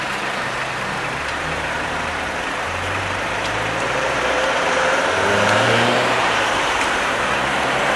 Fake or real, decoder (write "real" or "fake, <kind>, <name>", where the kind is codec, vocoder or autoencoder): fake, vocoder, BigVGAN v2